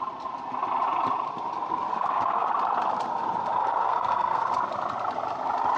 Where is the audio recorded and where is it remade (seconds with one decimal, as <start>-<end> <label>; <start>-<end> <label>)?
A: 0.0-1.9 recorded; 1.9-2.5 remade; 2.5-3.6 recorded; 3.6-4.5 remade; 4.5-5.8 recorded